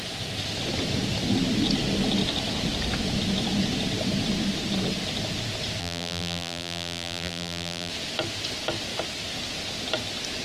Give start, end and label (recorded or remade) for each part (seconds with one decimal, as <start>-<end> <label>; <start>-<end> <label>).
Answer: 0.0-5.8 recorded; 5.8-7.9 remade; 7.9-10.4 recorded